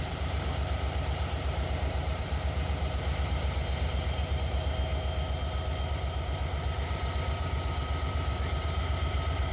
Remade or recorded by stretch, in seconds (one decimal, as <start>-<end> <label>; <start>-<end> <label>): 0.0-4.9 remade; 4.9-5.9 recorded; 5.9-9.5 remade